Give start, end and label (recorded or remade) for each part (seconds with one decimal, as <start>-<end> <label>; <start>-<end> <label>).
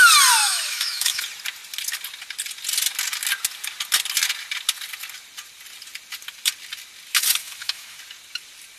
0.0-0.4 recorded; 0.4-1.2 remade; 1.2-7.4 recorded; 7.4-8.0 remade; 8.0-8.8 recorded